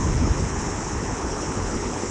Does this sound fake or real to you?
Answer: fake